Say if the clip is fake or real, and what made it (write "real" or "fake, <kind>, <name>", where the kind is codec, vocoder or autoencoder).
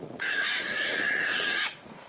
fake, vocoder, Vocos